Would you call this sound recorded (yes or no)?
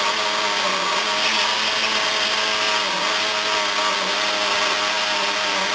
yes